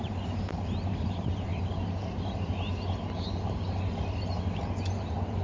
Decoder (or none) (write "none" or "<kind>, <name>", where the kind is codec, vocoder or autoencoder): none